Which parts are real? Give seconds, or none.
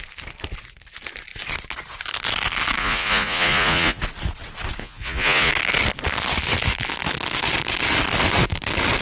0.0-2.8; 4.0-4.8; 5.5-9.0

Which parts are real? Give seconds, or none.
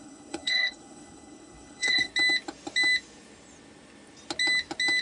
2.1-5.0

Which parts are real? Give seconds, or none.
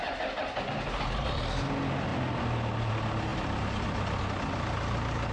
0.0-5.3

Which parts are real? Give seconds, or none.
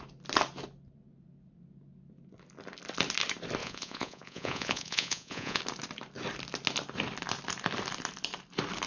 0.0-3.6; 5.6-8.9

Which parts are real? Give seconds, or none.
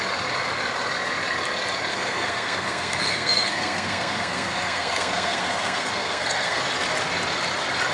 0.0-1.9; 6.6-7.9